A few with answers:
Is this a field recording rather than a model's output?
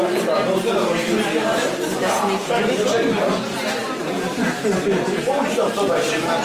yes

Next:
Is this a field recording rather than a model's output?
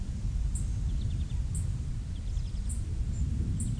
yes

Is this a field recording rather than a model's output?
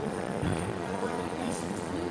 no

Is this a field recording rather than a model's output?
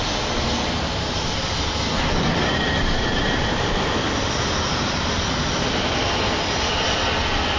yes